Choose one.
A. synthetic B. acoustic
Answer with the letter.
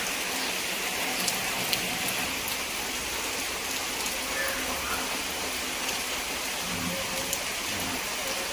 B